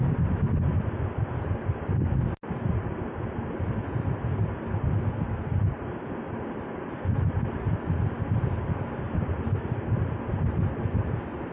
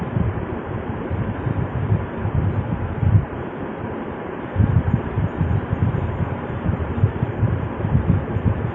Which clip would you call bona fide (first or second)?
first